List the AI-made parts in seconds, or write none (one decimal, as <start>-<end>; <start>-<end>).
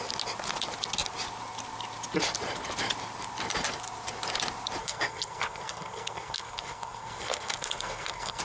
4.8-8.4